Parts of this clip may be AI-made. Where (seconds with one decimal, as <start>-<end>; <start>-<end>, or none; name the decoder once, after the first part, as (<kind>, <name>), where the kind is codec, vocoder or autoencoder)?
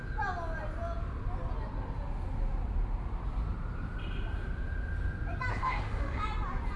5.5-6.2 (autoencoder, DAC-VAE)